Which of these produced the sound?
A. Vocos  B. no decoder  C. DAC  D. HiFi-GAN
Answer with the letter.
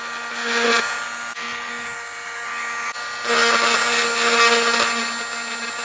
B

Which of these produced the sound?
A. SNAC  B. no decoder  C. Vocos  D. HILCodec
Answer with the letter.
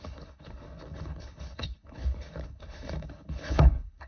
D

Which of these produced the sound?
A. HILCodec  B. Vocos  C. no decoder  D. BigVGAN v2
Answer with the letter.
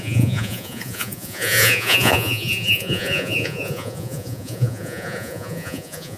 B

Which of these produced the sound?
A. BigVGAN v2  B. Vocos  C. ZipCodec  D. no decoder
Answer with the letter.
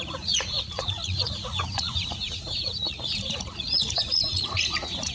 B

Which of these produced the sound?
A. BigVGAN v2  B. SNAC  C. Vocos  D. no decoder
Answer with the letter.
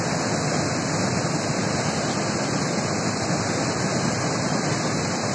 D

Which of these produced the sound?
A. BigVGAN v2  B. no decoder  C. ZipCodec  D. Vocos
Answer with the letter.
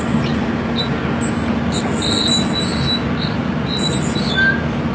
B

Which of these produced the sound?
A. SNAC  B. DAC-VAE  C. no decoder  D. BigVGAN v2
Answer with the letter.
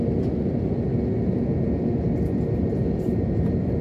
C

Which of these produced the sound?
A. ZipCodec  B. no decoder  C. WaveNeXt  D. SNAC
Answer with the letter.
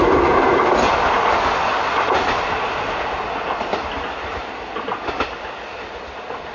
B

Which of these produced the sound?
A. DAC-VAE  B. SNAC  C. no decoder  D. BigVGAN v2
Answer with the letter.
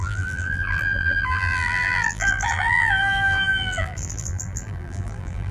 D